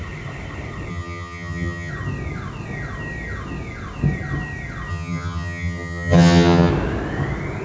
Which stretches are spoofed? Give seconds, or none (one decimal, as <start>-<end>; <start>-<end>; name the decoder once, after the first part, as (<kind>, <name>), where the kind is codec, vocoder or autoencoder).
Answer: 0.9-1.9 (vocoder, HiFi-GAN); 4.9-6.7